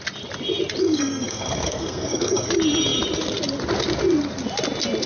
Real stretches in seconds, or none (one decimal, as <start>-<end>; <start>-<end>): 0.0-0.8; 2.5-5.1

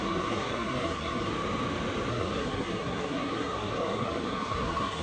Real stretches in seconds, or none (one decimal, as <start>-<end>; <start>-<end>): 1.3-2.1

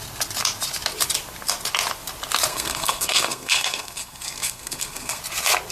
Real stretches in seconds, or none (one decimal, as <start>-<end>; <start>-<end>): 0.0-2.5; 5.2-5.7